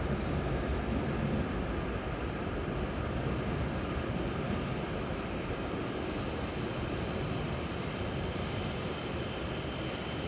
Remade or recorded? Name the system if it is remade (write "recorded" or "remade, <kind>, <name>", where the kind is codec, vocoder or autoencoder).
recorded